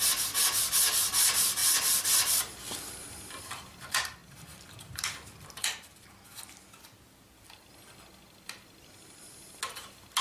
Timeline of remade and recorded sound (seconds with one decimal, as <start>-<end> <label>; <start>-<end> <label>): 0.0-10.2 recorded